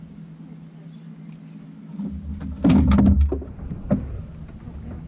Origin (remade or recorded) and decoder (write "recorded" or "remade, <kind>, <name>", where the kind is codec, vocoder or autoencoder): recorded